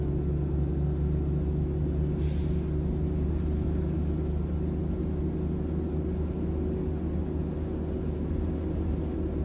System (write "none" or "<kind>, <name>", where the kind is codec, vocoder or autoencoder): none